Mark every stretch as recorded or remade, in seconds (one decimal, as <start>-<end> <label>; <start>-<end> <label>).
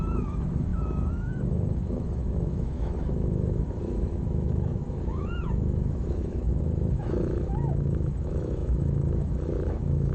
0.0-10.1 remade